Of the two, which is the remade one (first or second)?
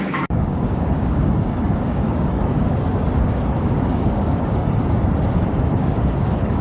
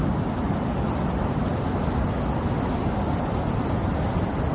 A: first